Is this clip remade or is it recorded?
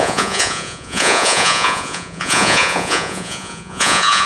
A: remade